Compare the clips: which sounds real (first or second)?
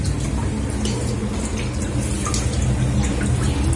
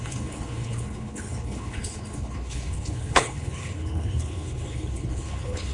first